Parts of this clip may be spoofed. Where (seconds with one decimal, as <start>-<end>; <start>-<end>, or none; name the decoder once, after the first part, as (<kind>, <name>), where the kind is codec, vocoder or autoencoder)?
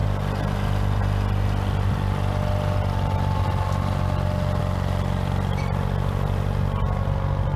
none